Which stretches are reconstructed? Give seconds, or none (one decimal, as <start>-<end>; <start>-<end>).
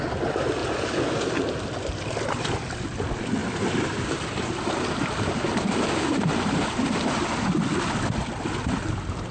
0.6-1.3; 3.4-7.5